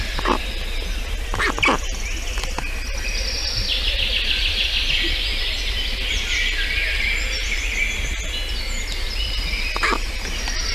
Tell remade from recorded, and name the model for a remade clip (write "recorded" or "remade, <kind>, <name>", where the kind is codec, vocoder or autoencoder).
recorded